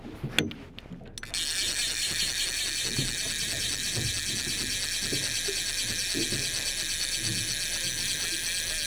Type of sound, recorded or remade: recorded